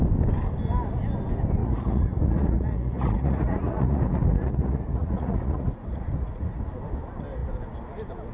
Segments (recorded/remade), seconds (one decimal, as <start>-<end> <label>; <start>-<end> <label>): 0.0-1.6 recorded; 1.6-6.6 remade; 6.6-8.3 recorded